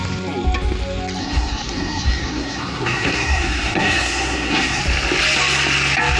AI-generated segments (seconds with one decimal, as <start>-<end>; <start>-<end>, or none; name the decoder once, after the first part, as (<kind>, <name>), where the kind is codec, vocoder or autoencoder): 1.2-4.8 (codec, SNAC)